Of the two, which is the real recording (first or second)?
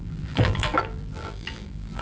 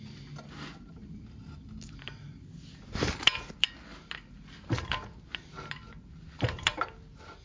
second